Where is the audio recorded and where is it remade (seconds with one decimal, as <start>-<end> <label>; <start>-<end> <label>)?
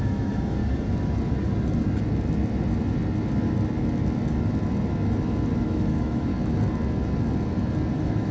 0.0-0.6 remade; 0.6-5.6 recorded; 5.6-6.3 remade; 6.3-7.9 recorded; 7.9-8.3 remade